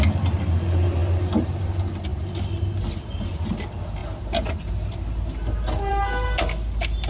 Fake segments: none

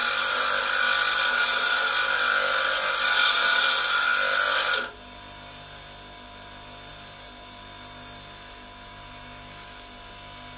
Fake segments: none

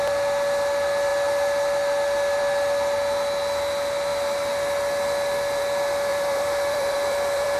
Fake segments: 6.1-7.6 (vocoder, BigVGAN v2)

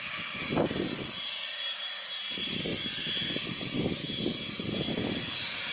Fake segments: none

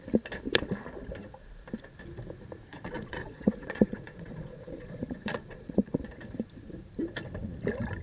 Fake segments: 2.7-6.0 (vocoder, Vocos)

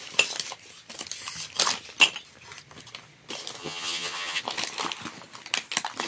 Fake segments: 3.6-4.4 (vocoder, HiFi-GAN)

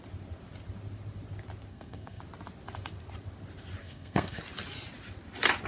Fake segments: 1.7-2.2 (codec, SNAC); 3.8-4.4

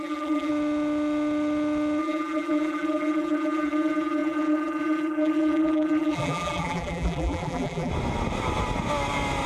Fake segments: 0.0-0.5 (vocoder, BigVGAN v2); 2.0-7.9